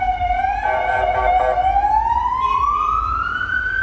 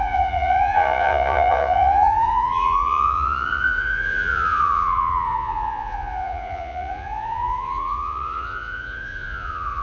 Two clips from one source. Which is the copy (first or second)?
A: second